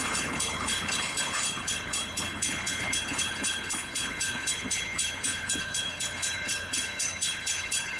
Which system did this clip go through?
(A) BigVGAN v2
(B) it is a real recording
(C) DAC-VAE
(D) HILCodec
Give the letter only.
D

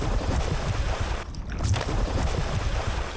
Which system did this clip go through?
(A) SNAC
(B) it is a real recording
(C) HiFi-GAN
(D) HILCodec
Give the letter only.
B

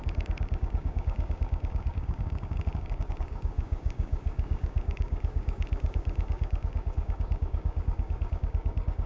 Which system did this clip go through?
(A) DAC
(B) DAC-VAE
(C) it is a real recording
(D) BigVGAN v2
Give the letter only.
A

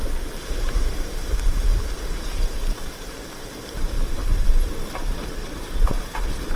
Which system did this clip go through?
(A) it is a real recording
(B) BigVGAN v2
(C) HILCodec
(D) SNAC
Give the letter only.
B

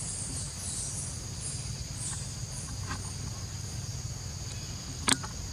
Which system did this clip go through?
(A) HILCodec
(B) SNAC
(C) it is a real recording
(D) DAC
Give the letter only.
C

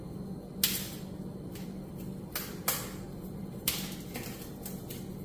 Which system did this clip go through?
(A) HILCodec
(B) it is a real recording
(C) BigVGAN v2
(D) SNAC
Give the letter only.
B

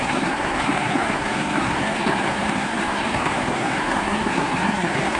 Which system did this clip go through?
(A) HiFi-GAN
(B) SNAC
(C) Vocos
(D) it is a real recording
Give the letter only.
B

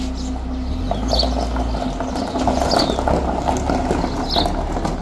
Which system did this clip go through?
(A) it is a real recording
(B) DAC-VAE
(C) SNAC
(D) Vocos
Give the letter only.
A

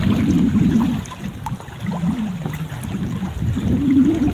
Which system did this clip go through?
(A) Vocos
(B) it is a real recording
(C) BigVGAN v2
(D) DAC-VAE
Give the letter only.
B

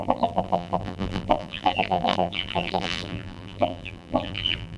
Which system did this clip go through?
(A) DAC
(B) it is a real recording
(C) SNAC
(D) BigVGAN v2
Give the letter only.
D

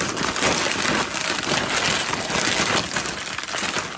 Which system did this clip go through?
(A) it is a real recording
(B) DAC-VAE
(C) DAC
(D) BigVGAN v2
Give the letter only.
A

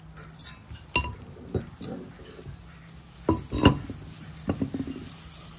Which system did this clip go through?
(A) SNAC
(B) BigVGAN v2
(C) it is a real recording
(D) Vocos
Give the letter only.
C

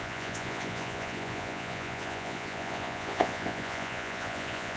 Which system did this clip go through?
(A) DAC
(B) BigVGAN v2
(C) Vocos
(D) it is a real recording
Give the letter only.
C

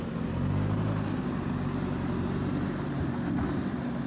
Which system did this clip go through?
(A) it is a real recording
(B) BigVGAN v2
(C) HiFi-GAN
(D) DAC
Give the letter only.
A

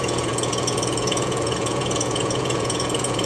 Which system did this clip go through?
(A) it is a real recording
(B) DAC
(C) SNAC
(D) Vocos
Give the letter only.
D